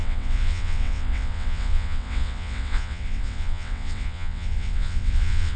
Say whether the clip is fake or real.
fake